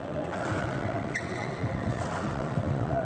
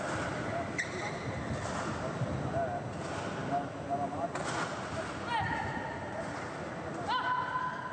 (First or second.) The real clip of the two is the second